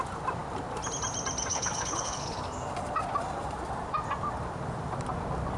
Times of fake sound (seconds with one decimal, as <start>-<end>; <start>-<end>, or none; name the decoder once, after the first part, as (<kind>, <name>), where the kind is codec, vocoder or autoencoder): 1.5-2.4 (codec, HILCodec)